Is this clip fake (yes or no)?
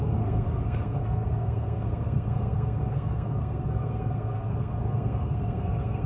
yes